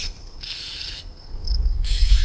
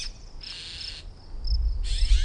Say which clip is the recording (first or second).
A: second